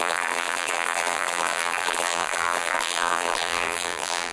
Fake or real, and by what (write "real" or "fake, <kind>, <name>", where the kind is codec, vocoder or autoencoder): fake, vocoder, BigVGAN v2